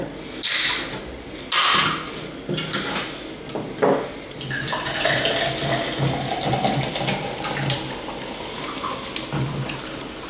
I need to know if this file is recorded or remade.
recorded